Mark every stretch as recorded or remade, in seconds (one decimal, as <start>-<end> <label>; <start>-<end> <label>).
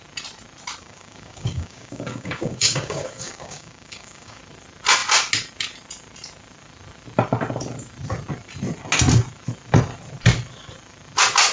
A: 0.0-0.8 recorded; 0.8-4.4 remade; 4.4-11.5 recorded